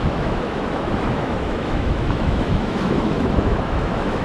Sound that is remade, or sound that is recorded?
remade